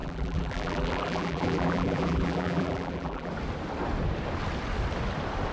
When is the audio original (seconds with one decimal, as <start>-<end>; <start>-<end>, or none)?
3.3-5.5